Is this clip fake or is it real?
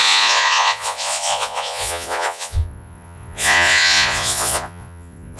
fake